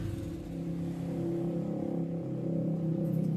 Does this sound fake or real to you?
real